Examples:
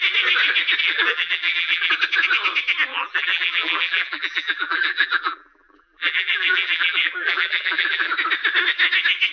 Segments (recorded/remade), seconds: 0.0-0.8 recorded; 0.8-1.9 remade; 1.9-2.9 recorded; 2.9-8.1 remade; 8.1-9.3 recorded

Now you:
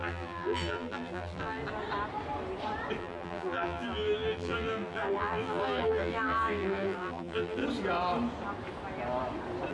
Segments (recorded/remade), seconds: 0.0-1.6 remade; 1.6-3.0 recorded; 3.0-7.6 remade; 7.6-9.7 recorded

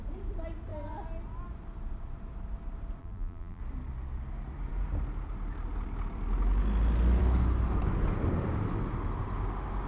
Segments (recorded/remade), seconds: 0.0-3.0 recorded; 3.0-3.6 remade; 3.6-9.9 recorded

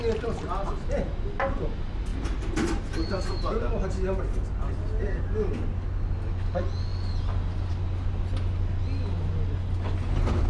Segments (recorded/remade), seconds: 0.0-10.5 recorded

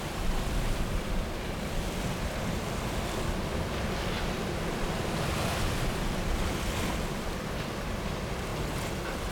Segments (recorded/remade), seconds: 0.0-9.3 recorded

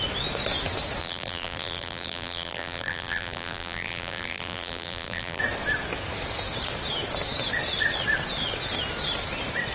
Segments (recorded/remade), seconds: 0.0-1.0 recorded; 1.0-5.4 remade; 5.4-9.7 recorded